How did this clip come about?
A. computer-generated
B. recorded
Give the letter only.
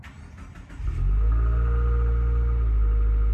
B